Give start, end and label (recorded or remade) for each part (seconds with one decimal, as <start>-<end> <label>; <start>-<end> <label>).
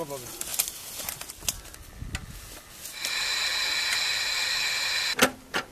0.0-5.7 recorded